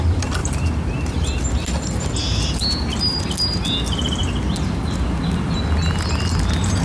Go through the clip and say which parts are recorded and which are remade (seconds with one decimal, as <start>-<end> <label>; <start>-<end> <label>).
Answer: 0.0-0.4 recorded; 0.4-1.4 remade; 1.4-6.8 recorded

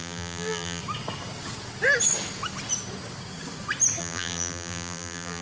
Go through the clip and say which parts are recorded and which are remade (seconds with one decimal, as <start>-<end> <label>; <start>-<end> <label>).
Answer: 0.0-0.8 remade; 0.8-4.0 recorded; 4.0-5.4 remade